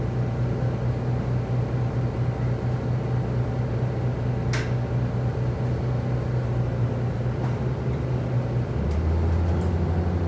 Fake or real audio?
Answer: real